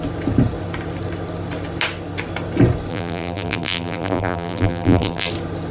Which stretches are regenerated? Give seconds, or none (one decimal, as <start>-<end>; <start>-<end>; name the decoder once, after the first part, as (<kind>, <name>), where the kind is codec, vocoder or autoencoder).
2.9-5.3 (vocoder, BigVGAN v2)